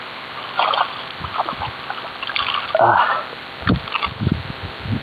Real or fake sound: real